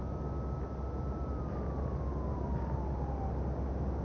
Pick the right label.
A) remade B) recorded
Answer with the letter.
B